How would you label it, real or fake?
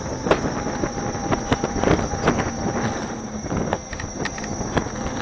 real